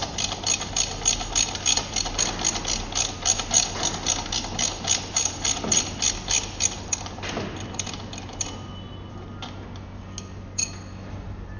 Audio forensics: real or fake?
real